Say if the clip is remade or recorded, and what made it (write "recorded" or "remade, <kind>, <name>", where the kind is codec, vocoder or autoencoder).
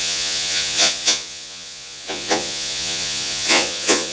remade, vocoder, Vocos